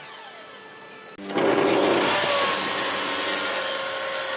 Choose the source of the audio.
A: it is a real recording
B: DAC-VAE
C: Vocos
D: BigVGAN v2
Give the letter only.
A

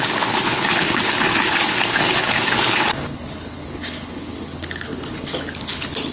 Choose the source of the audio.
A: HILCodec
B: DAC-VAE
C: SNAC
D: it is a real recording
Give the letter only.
A